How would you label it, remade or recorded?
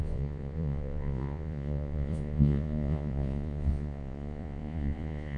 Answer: remade